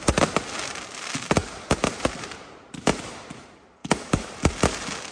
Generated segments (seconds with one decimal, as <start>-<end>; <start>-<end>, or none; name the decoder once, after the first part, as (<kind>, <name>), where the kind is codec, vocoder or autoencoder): 3.8-4.3 (codec, DAC)